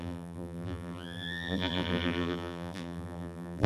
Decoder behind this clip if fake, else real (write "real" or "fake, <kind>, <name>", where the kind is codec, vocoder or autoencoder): fake, vocoder, BigVGAN v2